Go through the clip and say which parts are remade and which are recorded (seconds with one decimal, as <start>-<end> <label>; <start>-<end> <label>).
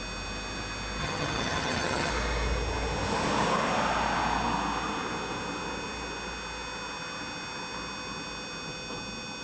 0.0-1.0 recorded; 1.0-2.1 remade; 2.1-9.4 recorded